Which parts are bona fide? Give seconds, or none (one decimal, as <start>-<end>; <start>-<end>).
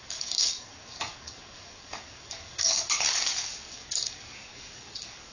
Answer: none